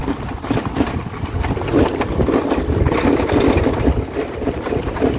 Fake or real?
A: real